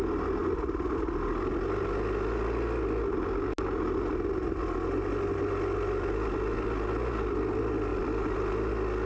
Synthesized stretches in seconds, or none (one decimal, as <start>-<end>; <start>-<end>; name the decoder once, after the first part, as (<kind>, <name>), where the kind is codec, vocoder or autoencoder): 7.9-8.7 (vocoder, BigVGAN v2)

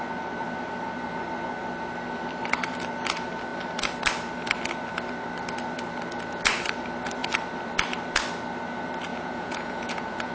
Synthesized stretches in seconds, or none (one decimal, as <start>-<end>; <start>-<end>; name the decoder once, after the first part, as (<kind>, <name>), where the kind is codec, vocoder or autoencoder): 9.1-10.3 (vocoder, Vocos)

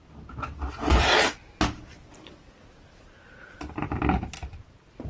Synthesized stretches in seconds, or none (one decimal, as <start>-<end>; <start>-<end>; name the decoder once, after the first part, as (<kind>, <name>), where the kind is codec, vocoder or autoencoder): none

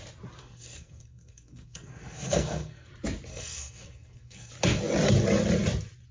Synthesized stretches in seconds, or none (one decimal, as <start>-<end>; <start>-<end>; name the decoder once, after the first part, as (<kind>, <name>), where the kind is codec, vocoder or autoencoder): 0.4-2.9 (codec, SNAC); 3.3-4.5

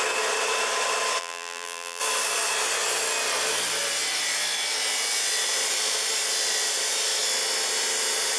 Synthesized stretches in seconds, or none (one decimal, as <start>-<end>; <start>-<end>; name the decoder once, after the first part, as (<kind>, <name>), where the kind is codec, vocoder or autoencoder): 1.2-2.0 (vocoder, BigVGAN v2)

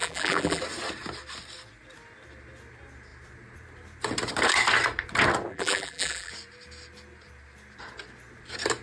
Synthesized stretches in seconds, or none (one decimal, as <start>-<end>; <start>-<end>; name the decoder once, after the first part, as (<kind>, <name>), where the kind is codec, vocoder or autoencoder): 0.0-0.6 (vocoder, BigVGAN v2); 5.5-6.3

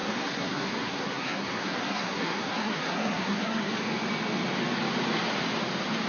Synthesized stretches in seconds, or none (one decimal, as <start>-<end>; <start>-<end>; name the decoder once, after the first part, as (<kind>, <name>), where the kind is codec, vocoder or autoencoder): 0.0-3.7 (codec, SNAC)

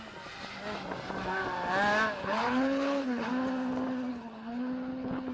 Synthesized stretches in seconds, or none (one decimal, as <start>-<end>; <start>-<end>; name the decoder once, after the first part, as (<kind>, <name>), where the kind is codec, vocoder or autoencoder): 2.2-3.3 (codec, HILCodec); 4.1-5.3